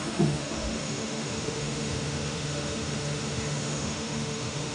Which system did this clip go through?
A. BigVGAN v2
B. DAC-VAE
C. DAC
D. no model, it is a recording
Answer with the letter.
B